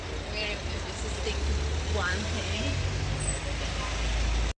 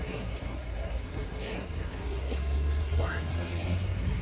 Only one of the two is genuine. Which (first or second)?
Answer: first